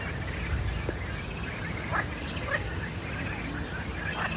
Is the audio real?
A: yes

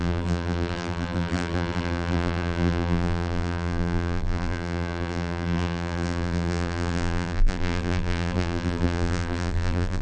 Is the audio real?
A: no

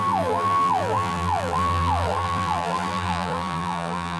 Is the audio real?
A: no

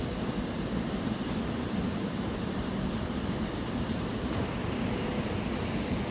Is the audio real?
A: no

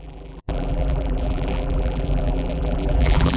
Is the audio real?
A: no